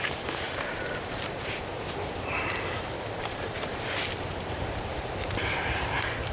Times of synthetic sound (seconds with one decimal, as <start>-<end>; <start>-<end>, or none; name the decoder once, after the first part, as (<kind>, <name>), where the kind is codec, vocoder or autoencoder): 0.0-1.7 (vocoder, BigVGAN v2); 3.2-6.3